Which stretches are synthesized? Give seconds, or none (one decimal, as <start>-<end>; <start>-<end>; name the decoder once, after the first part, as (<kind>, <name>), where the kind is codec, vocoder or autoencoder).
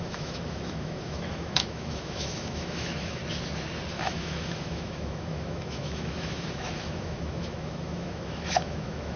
0.0-3.2 (autoencoder, DAC-VAE); 3.9-9.2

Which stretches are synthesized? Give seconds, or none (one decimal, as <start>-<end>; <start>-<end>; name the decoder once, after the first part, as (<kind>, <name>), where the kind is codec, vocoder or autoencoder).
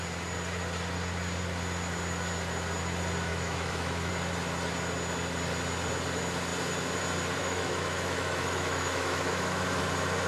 3.3-4.1 (autoencoder, DAC-VAE); 7.4-9.8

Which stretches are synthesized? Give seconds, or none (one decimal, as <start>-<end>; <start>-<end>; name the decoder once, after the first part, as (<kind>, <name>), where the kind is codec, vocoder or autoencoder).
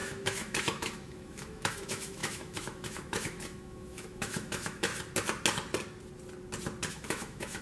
0.0-4.9 (autoencoder, DAC-VAE); 6.9-7.6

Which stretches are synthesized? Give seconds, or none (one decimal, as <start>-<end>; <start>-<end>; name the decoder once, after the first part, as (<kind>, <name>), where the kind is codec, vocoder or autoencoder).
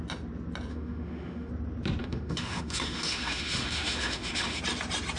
0.7-1.5 (autoencoder, DAC-VAE); 2.0-4.6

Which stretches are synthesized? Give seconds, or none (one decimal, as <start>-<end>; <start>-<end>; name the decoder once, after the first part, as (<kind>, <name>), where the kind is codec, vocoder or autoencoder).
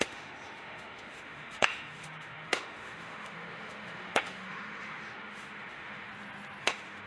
0.0-6.1 (autoencoder, DAC-VAE); 6.6-7.1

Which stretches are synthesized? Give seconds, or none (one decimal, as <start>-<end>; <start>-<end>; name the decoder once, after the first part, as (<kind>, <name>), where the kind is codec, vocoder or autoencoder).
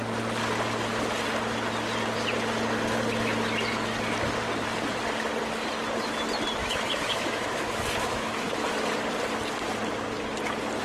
6.6-8.5 (autoencoder, DAC-VAE)